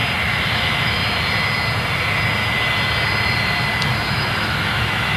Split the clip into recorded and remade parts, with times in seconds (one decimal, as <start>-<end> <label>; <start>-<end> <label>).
0.0-0.5 recorded; 0.5-1.0 remade; 1.0-4.1 recorded; 4.1-5.2 remade